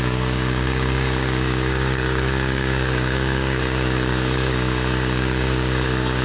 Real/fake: fake